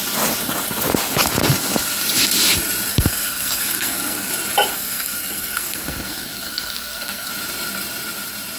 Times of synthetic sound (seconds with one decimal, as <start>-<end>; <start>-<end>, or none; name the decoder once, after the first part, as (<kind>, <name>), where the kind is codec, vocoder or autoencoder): 2.9-4.3 (codec, SNAC); 4.7-7.3